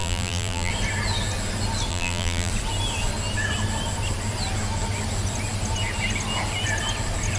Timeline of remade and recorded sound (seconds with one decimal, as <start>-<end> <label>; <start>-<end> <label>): 0.0-0.7 remade; 0.7-1.9 recorded; 1.9-2.5 remade; 2.5-7.4 recorded